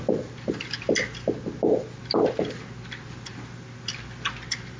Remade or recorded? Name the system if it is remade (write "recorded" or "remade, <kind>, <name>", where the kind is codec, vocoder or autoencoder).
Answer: recorded